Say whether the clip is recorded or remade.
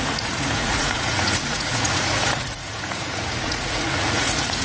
remade